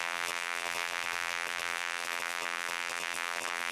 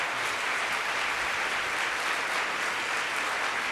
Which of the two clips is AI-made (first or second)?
first